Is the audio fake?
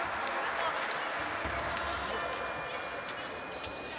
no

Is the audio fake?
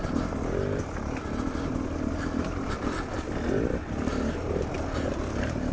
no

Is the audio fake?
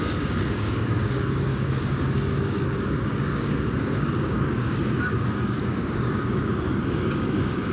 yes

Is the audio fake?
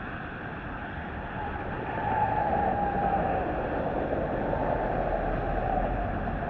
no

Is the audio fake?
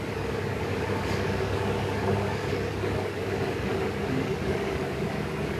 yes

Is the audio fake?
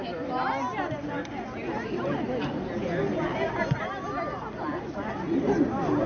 no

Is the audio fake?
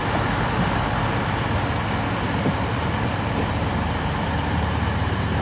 no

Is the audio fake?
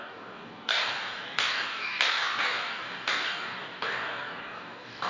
yes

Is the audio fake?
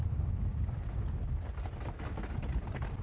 no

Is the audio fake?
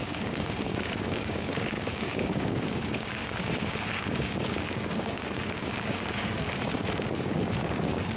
yes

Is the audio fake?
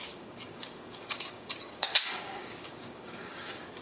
yes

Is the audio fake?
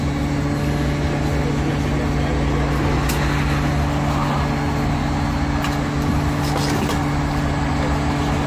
no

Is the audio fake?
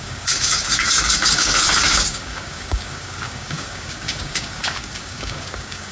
yes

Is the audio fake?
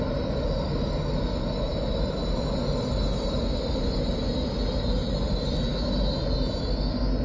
no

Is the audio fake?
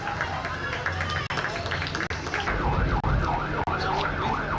no